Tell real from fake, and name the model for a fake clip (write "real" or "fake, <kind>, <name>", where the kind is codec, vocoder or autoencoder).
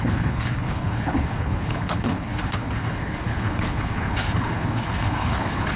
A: fake, codec, HILCodec